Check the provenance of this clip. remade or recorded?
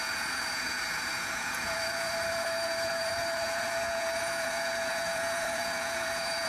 remade